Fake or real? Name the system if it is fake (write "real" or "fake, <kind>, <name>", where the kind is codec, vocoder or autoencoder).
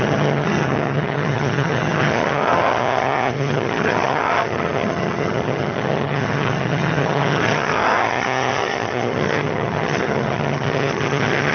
fake, vocoder, HiFi-GAN